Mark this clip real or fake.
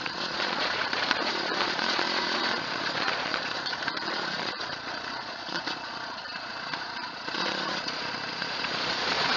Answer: fake